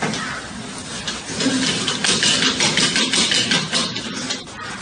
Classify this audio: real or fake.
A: real